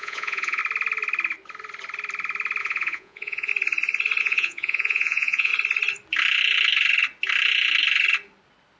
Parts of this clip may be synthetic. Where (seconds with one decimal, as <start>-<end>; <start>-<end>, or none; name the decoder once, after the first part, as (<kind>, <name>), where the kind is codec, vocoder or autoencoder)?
0.0-0.6 (vocoder, Vocos); 2.6-3.5; 4.2-5.5

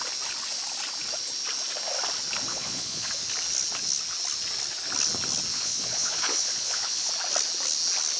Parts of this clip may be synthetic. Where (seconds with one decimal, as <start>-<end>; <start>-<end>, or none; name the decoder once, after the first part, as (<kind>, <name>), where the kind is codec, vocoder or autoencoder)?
2.5-3.1 (vocoder, Vocos); 5.5-7.1

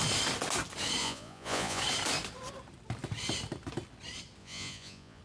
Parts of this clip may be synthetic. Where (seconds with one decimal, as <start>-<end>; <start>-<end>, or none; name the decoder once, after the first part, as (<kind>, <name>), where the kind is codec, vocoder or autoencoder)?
1.0-1.8 (vocoder, Vocos); 4.4-5.2